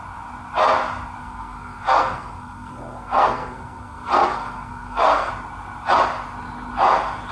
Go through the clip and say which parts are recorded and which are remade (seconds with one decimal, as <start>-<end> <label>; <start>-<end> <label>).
0.0-1.2 recorded; 1.2-5.3 remade; 5.3-7.3 recorded